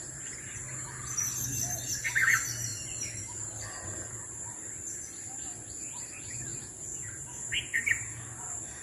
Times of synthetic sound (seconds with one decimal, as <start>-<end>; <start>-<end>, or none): 0.0-0.6; 1.9-8.8